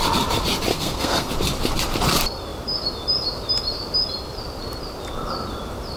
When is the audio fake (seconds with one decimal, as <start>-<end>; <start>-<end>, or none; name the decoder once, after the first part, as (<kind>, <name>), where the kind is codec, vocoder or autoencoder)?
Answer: 0.7-1.3 (codec, SNAC)